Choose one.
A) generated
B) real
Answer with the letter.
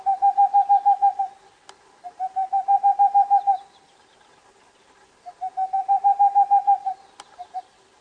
B